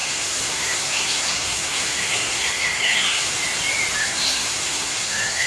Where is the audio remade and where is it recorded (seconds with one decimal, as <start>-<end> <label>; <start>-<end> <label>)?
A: 0.0-3.3 remade; 3.3-4.0 recorded; 4.0-5.5 remade

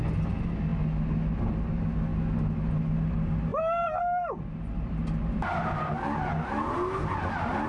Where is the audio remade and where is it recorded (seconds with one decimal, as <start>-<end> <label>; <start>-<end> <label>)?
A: 0.0-7.7 recorded

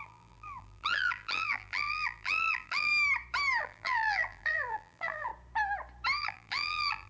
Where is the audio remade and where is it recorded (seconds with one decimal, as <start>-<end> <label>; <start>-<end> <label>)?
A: 0.0-2.9 remade; 2.9-3.6 recorded; 3.6-5.3 remade; 5.3-6.2 recorded; 6.2-7.1 remade

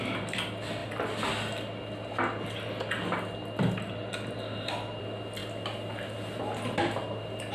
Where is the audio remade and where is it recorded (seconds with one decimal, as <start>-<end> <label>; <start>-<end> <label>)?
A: 0.0-7.5 recorded

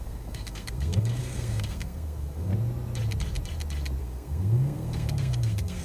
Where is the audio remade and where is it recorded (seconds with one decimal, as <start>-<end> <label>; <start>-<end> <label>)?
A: 0.0-2.5 remade; 2.5-4.0 recorded; 4.0-5.8 remade